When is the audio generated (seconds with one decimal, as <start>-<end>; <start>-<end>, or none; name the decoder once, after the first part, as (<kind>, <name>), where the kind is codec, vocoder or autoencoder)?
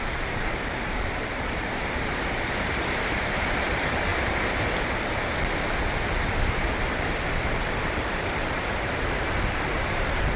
0.0-4.1 (vocoder, BigVGAN v2); 6.7-10.4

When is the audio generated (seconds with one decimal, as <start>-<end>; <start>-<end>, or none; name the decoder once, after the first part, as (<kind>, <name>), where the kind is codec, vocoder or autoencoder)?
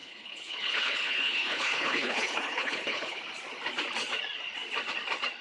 0.0-3.2 (codec, HILCodec)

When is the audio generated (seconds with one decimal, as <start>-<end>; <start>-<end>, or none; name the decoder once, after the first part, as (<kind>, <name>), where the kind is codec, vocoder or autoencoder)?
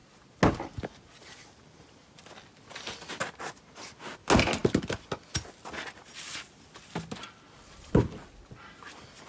none